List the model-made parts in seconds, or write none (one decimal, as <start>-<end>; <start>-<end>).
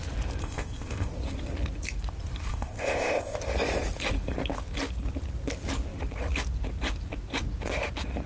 0.4-1.1; 2.5-3.4